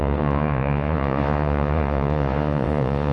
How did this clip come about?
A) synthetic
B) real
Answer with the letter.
A